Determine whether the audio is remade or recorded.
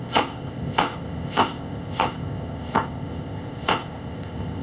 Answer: remade